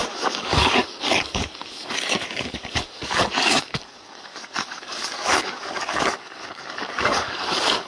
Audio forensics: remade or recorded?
remade